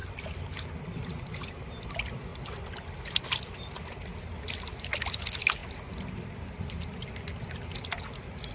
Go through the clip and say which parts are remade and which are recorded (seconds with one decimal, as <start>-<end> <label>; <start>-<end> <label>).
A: 0.0-8.5 recorded